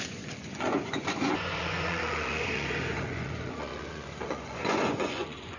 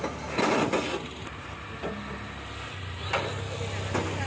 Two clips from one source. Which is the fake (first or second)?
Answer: first